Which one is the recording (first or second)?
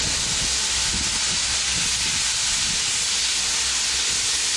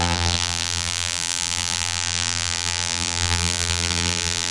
first